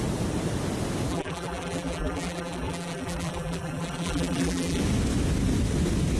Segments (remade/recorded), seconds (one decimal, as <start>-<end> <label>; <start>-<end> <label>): 0.0-1.1 recorded; 1.1-4.8 remade; 4.8-6.2 recorded